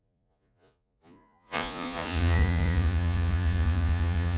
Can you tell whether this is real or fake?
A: fake